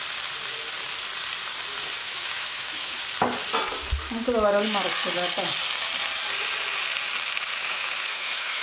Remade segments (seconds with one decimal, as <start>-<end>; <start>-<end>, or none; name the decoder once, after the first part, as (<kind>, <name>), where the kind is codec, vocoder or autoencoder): 2.0-3.0 (autoencoder, DAC-VAE); 7.5-8.6